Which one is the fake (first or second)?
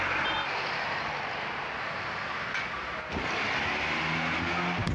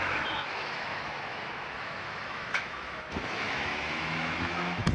second